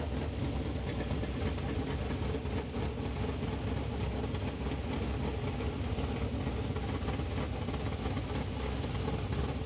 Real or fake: real